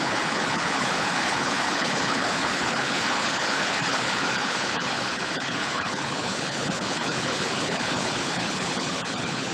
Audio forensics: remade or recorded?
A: remade